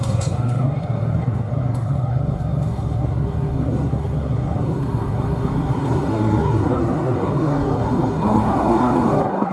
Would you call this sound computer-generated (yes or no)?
yes